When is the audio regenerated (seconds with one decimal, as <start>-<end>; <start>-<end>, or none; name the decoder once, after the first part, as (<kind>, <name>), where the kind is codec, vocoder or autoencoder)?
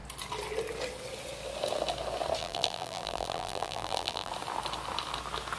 2.4-4.3 (vocoder, BigVGAN v2)